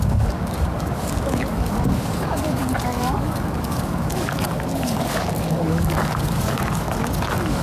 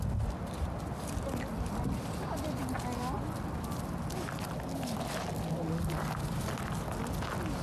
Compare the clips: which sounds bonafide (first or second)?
second